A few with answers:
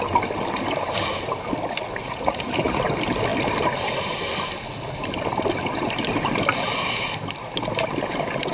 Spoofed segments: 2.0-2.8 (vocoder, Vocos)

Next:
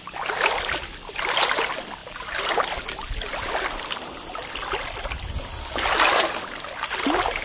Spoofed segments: none

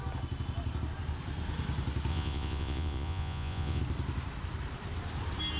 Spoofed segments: 2.1-3.8 (vocoder, Vocos)

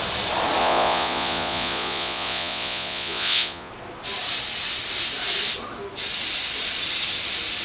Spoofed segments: 0.6-3.7 (vocoder, Vocos)

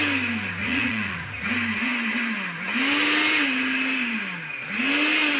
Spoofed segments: 0.6-1.5 (vocoder, Vocos)

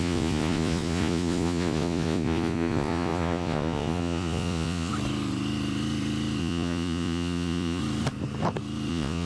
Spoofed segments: 0.0-4.9 (vocoder, Vocos); 6.4-7.8; 8.9-9.3

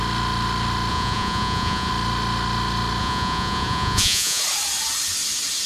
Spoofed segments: 0.9-1.9 (vocoder, Vocos); 3.0-4.4